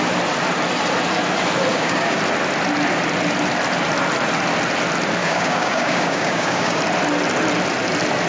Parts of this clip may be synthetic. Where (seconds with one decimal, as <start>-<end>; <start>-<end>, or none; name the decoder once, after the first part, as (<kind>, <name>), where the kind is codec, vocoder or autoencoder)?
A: 1.7-2.2 (codec, DAC); 5.2-6.8